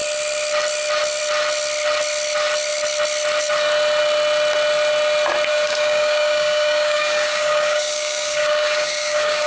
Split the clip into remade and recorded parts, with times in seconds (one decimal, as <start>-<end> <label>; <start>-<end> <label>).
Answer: 0.0-5.5 recorded; 5.5-9.5 remade